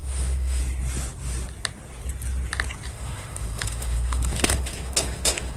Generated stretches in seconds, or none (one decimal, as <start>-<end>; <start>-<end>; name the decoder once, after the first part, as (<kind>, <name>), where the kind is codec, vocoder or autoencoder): 0.0-0.6 (autoencoder, DAC-VAE); 2.9-5.6